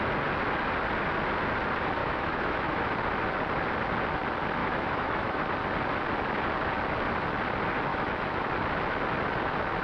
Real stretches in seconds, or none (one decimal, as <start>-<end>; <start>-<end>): 0.0-2.0; 2.8-4.6; 5.4-7.9; 8.5-9.8